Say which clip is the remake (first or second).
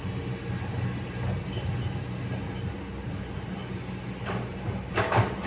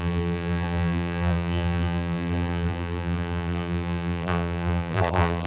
second